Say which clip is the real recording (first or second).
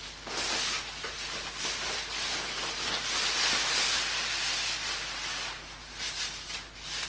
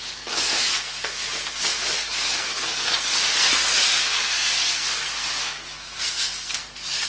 first